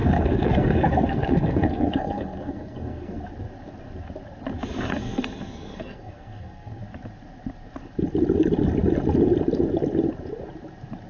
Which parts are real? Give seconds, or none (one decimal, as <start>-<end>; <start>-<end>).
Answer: 3.2-4.9; 6.8-11.1